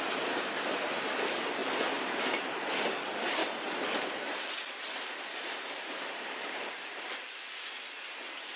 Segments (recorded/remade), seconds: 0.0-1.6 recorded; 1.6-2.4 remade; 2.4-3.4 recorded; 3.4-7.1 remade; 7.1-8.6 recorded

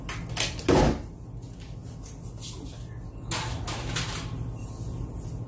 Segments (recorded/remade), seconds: 0.0-5.5 recorded

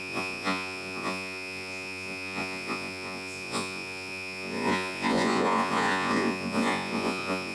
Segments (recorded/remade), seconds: 0.0-7.5 remade

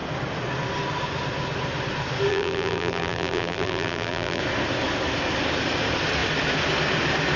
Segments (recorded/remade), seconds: 0.0-2.3 recorded; 2.3-4.4 remade; 4.4-7.4 recorded

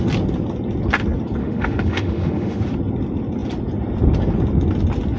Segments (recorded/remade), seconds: 0.0-1.4 recorded; 1.4-2.6 remade; 2.6-5.2 recorded